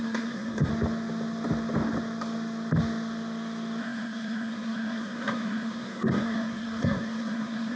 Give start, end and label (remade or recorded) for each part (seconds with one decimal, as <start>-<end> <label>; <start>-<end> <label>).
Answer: 0.0-0.7 remade; 0.7-3.8 recorded; 3.8-7.8 remade